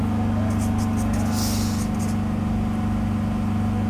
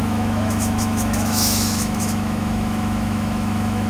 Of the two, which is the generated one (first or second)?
second